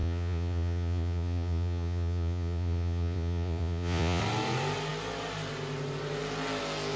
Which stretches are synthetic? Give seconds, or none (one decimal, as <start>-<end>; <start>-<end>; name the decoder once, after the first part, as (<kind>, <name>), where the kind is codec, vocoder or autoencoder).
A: 0.0-4.2 (vocoder, Vocos)